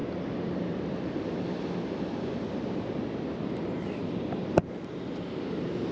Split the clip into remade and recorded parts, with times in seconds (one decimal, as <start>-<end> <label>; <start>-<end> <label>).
0.0-5.9 recorded